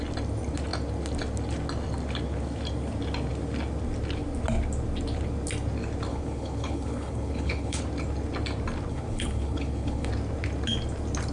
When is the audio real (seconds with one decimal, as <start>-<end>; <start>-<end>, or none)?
0.0-6.1; 7.8-8.9; 10.1-11.3